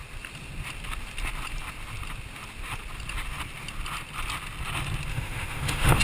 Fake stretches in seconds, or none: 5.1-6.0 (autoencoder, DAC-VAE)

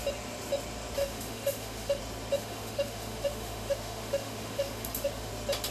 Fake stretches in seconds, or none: 1.0-2.0 (autoencoder, DAC-VAE); 2.4-5.3

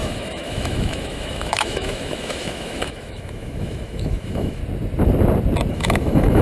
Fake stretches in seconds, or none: 0.0-4.6 (autoencoder, DAC-VAE); 5.7-6.4